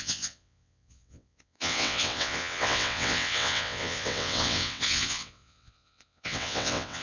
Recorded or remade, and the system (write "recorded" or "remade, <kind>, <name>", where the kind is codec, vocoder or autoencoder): remade, vocoder, WaveNeXt